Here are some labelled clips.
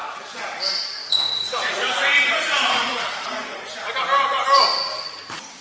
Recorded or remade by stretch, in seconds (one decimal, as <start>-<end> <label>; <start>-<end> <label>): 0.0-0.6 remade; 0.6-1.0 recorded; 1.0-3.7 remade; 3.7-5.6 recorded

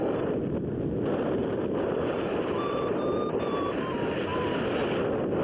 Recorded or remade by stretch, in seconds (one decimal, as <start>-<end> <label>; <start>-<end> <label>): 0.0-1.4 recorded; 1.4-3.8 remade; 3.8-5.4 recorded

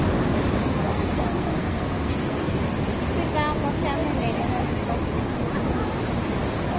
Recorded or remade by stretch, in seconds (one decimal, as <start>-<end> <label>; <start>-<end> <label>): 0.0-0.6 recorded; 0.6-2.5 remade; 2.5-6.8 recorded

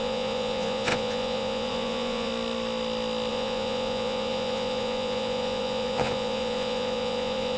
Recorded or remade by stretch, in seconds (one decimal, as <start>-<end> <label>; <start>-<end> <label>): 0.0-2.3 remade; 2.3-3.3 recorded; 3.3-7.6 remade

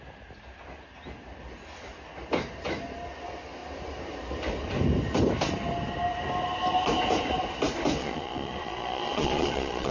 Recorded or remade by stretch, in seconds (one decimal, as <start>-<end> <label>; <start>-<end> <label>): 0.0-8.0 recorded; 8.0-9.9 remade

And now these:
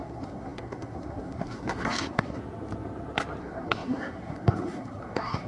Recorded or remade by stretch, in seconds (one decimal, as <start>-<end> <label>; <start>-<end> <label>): 0.0-2.4 remade; 2.4-3.4 recorded; 3.4-5.5 remade

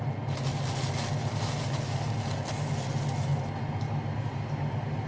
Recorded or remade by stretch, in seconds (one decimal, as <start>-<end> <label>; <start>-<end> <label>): 0.0-5.1 recorded

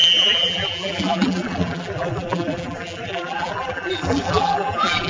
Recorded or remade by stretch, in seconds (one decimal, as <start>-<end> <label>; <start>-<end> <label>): 0.0-5.1 remade